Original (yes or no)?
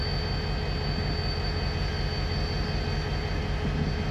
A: yes